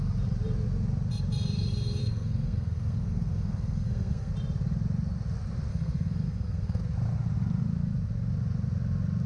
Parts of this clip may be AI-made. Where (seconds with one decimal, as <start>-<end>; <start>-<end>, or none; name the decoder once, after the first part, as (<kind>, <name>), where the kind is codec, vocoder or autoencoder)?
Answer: 2.0-4.3 (codec, SNAC); 5.7-6.8